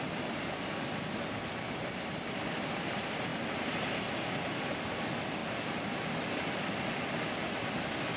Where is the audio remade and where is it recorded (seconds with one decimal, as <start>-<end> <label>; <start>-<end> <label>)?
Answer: 0.0-3.3 recorded; 3.3-4.0 remade; 4.0-8.2 recorded